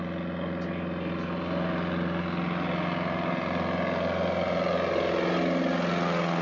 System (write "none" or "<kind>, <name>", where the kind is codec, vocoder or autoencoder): none